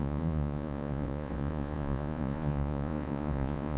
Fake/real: fake